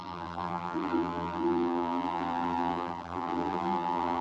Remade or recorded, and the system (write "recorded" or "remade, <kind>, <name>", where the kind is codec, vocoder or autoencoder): remade, vocoder, BigVGAN v2